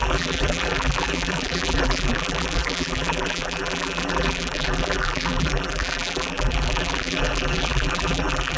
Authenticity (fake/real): fake